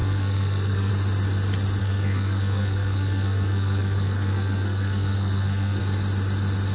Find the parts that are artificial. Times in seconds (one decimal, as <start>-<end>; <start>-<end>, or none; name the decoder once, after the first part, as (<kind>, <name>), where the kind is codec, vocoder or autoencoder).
0.0-0.9 (codec, SNAC); 1.8-5.8